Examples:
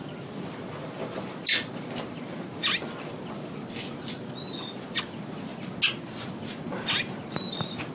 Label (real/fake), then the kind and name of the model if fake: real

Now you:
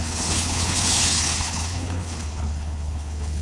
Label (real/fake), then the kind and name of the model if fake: fake, codec, HILCodec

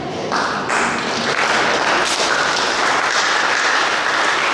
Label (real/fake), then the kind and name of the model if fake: real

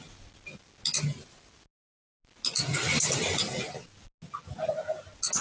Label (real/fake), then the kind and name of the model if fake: real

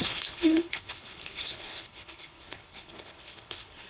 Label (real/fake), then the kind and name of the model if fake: fake, codec, HILCodec